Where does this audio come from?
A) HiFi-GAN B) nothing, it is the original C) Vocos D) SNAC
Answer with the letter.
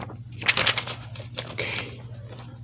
B